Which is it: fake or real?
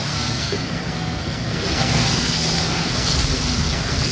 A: fake